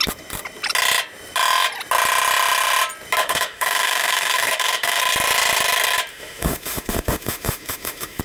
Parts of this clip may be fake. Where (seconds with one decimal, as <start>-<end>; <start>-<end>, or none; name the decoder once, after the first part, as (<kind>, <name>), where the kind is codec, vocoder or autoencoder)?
3.2-5.0 (autoencoder, DAC-VAE); 6.1-8.2